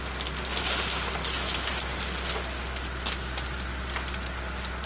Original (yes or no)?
yes